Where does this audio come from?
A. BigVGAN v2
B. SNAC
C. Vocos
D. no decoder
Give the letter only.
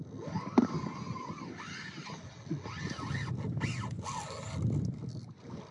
D